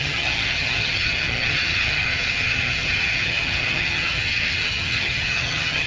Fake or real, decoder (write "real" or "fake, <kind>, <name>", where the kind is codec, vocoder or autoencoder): fake, vocoder, HiFi-GAN